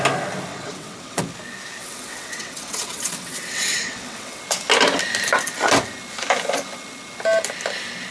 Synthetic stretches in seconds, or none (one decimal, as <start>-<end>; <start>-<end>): 0.5-1.2; 1.8-4.4